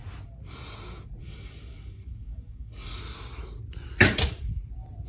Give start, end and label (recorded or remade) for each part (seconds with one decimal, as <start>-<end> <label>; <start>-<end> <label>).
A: 0.0-1.2 recorded; 1.2-3.0 remade; 3.0-5.1 recorded